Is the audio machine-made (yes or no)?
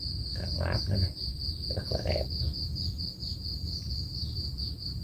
no